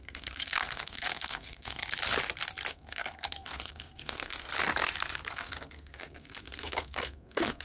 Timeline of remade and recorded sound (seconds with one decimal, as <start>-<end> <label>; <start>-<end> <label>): 0.0-1.8 remade; 1.8-2.7 recorded; 2.7-4.5 remade; 4.5-5.3 recorded; 5.3-7.6 remade